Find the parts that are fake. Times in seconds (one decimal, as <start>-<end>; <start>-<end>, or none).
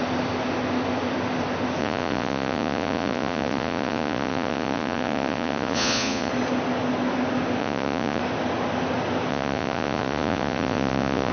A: 1.8-6.3; 7.6-8.2; 9.3-11.3